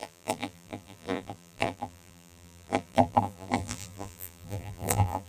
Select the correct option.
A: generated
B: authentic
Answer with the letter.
A